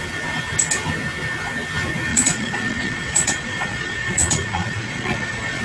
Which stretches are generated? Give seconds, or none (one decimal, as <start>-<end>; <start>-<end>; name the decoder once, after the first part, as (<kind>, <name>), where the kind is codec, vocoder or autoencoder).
2.1-5.6 (vocoder, Vocos)